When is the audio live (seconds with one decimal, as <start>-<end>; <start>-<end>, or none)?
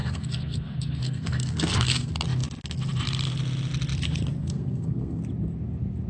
2.1-4.4; 5.2-6.1